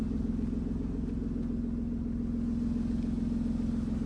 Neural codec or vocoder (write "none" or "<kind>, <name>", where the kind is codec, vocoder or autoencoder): none